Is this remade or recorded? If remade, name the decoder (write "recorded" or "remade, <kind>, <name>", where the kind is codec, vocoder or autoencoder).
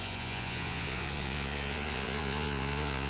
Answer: remade, vocoder, Vocos